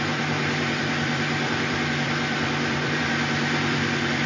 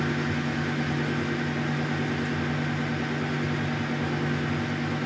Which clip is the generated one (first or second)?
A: first